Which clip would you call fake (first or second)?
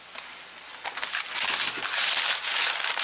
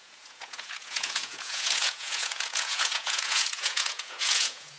second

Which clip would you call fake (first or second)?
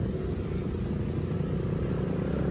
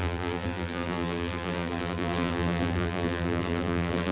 second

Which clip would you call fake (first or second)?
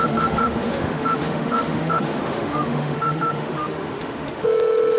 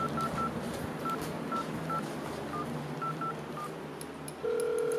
first